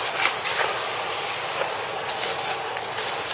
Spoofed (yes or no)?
no